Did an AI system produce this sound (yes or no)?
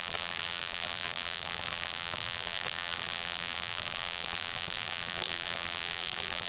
yes